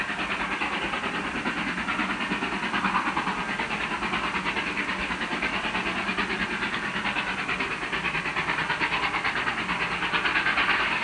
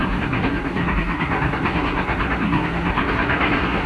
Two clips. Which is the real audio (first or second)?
first